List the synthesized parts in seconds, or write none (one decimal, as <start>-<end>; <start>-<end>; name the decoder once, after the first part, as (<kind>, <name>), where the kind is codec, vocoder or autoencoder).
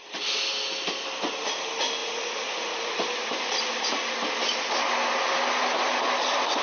2.0-2.9 (vocoder, Vocos)